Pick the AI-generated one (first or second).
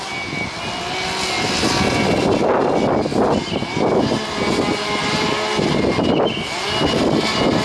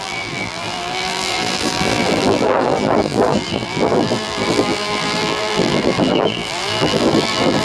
second